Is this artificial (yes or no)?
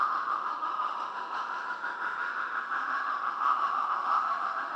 yes